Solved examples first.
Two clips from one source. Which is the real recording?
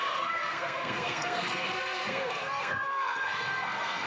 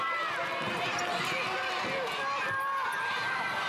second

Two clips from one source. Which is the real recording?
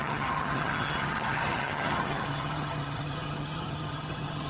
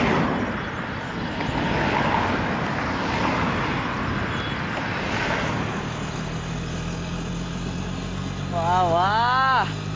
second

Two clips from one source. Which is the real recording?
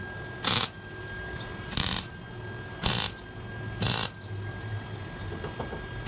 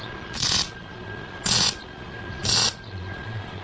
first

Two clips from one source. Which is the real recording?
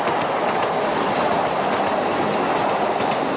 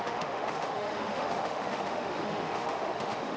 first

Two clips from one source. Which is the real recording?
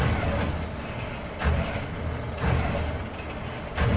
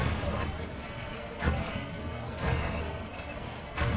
first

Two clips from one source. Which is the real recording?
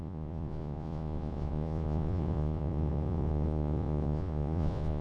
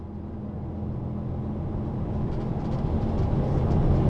second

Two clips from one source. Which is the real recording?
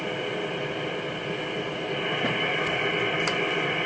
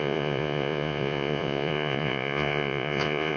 first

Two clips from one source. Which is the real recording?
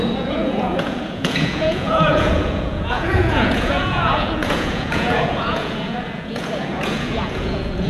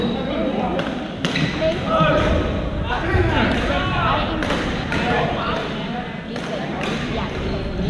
second